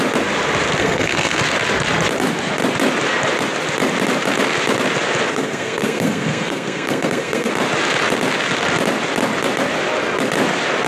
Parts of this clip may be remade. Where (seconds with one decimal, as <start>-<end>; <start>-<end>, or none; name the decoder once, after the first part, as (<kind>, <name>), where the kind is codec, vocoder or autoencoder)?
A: 0.8-1.4 (codec, SNAC); 5.3-7.5